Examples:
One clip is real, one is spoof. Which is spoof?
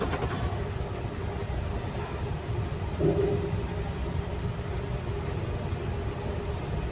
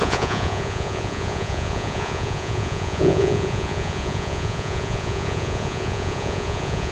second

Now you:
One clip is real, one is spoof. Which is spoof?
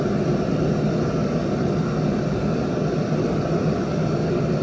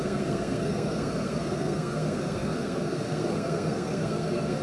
second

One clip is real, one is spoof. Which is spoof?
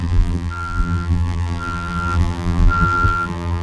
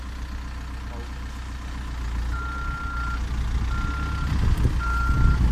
first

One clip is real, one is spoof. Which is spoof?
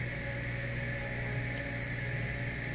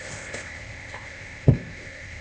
second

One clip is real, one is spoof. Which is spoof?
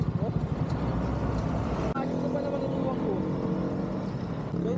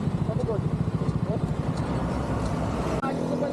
second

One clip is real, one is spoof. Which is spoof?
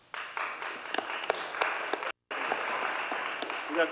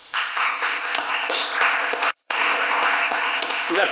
second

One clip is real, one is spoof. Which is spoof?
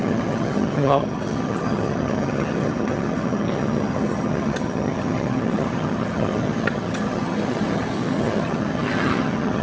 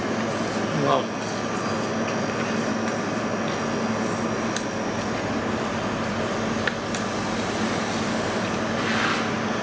first